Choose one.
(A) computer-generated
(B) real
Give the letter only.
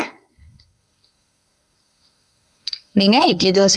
A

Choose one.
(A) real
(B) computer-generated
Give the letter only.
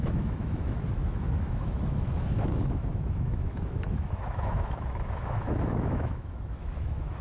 B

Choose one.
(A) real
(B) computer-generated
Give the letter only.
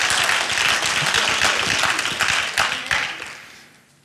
A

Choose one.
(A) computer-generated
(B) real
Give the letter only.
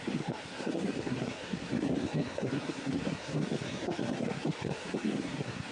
A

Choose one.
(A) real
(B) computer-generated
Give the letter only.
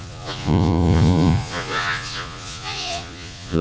B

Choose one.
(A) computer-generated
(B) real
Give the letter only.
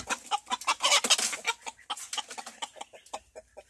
B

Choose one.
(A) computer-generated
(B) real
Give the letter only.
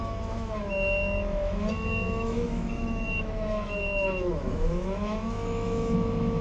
A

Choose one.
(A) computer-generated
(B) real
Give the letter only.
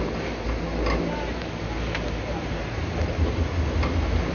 B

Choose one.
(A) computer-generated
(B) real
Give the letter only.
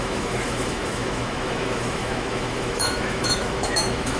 A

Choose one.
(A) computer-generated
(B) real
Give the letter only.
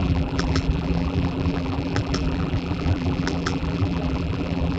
A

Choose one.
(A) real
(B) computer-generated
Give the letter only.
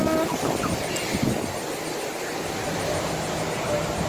A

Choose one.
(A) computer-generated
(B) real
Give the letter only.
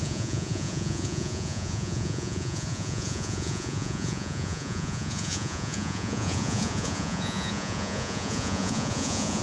A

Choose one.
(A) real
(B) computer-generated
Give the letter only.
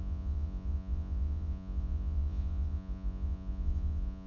B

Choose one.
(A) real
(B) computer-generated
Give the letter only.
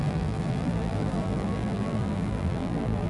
B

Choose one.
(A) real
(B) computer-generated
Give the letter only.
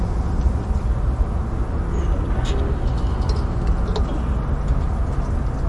A